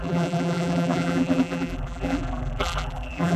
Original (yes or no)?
no